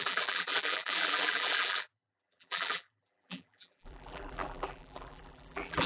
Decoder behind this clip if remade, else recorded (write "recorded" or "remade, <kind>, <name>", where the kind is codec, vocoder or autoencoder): remade, vocoder, BigVGAN v2